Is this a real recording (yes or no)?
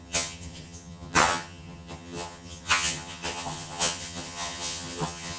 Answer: no